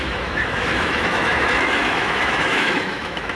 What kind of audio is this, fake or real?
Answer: fake